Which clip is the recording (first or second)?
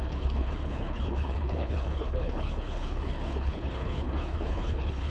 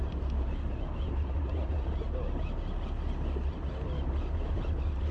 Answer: second